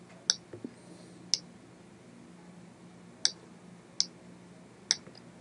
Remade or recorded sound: recorded